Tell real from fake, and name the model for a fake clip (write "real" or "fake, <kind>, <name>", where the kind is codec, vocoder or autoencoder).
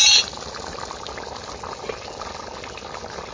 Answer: real